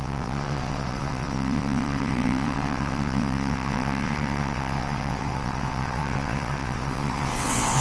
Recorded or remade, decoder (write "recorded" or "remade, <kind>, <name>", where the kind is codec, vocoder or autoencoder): remade, vocoder, WaveNeXt